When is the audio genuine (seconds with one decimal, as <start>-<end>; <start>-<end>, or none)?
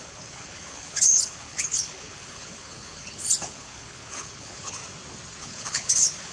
4.8-5.4